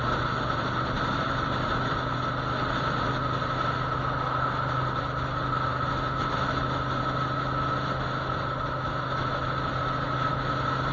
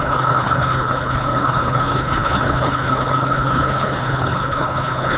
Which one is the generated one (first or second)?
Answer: second